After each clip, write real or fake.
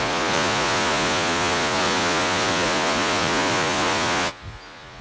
fake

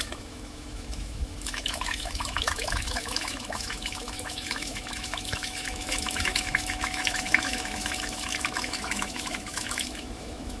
fake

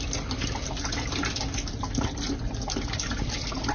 real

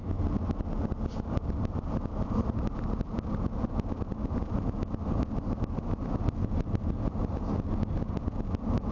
real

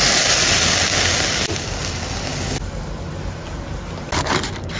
real